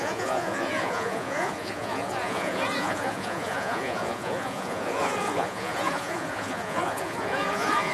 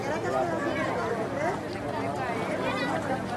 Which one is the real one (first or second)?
second